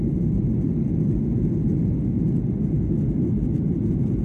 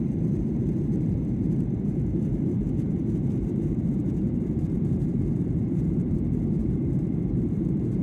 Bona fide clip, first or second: first